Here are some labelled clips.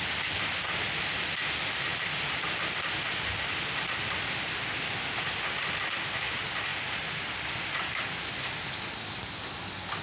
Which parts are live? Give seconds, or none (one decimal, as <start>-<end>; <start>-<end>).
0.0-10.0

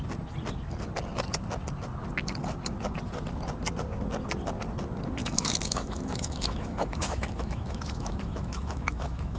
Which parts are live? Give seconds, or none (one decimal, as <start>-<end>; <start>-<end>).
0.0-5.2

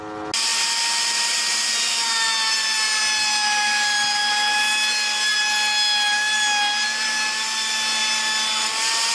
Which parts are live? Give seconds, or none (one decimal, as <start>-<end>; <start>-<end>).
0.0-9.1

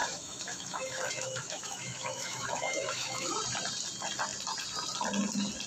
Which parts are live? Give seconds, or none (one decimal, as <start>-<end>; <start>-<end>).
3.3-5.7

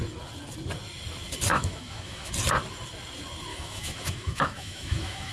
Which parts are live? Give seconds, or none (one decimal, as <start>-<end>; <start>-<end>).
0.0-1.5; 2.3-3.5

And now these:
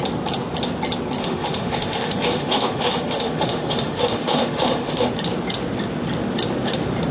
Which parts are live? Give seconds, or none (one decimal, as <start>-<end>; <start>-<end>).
0.0-1.2; 5.1-7.1